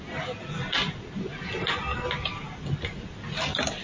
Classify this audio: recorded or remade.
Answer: remade